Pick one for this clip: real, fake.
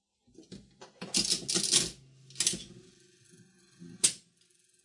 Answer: real